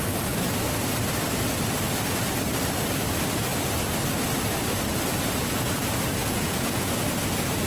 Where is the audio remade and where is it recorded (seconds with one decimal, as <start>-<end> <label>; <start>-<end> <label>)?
0.0-6.2 recorded; 6.2-6.9 remade; 6.9-7.7 recorded